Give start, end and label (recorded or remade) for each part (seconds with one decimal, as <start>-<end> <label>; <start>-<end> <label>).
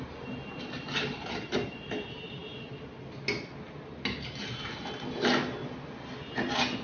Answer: 0.0-2.4 remade; 2.4-4.9 recorded; 4.9-5.6 remade; 5.6-6.2 recorded; 6.2-6.8 remade